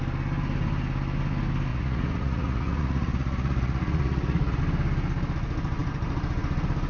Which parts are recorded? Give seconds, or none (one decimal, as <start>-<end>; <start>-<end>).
0.0-1.7; 4.6-6.9

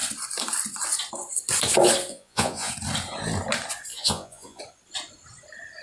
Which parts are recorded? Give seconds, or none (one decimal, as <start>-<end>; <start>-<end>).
0.0-2.1; 2.7-3.9; 4.6-5.8

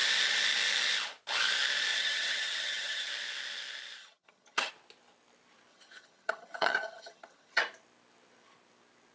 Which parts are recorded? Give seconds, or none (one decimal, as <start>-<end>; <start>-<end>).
0.0-1.9; 3.1-4.0; 4.7-5.7; 7.6-9.1

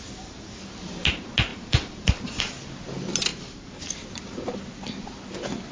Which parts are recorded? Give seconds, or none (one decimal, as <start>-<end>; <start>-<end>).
0.0-1.5; 2.4-3.3; 3.9-5.7